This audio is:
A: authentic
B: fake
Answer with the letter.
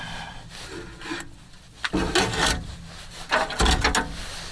A